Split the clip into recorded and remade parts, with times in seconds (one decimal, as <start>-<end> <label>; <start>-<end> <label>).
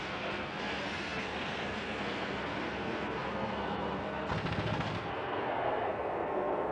0.0-6.7 remade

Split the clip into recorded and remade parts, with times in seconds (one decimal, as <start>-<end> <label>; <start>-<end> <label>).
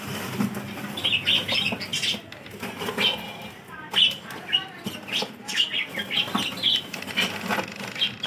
0.0-8.3 recorded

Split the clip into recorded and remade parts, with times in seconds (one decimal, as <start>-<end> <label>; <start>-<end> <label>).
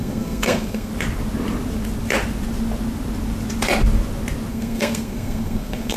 0.0-0.9 remade; 0.9-4.5 recorded; 4.5-6.0 remade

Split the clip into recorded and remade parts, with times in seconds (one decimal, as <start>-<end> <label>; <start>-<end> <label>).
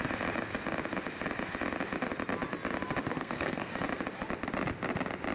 0.0-3.1 recorded; 3.1-3.7 remade; 3.7-5.3 recorded